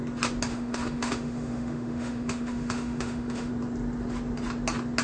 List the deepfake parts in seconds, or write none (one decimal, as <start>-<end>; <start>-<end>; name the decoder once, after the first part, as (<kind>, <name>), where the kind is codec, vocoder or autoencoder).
0.5-3.5 (autoencoder, DAC-VAE)